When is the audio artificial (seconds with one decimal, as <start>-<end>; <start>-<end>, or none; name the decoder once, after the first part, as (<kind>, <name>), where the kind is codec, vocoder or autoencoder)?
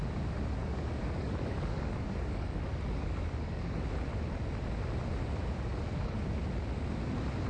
0.6-3.8 (codec, DAC); 5.7-6.2